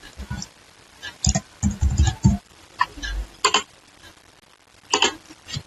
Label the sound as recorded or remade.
recorded